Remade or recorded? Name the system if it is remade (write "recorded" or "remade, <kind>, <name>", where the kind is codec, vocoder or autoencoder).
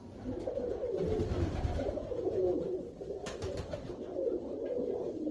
recorded